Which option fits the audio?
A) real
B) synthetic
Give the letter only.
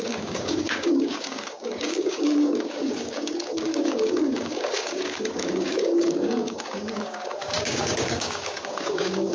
B